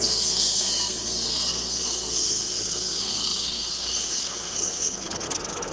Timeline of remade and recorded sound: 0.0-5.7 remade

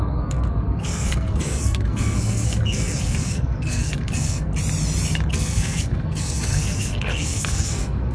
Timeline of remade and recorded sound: 0.0-4.5 remade; 4.5-5.3 recorded; 5.3-8.1 remade

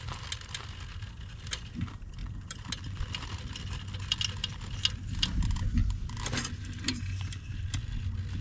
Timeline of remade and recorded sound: 0.0-8.4 recorded